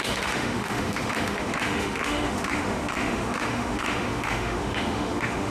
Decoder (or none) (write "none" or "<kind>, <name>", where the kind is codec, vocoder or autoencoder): autoencoder, DAC-VAE